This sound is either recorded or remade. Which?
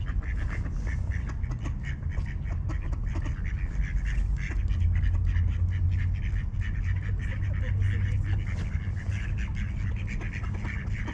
recorded